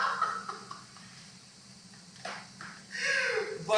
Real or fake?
real